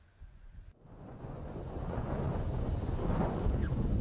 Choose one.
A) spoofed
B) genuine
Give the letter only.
A